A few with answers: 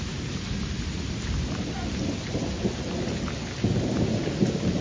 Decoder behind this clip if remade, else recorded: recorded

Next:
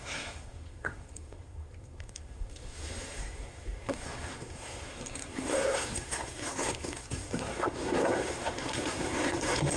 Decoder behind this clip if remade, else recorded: remade, codec, SNAC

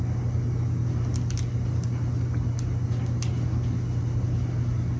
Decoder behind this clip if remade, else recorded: recorded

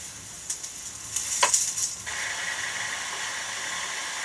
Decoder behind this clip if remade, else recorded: recorded